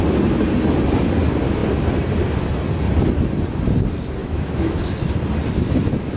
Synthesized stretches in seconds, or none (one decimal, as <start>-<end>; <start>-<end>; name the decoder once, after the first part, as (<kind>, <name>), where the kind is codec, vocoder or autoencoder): 4.2-4.9 (autoencoder, DAC-VAE)